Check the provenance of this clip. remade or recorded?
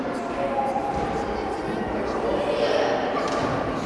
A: recorded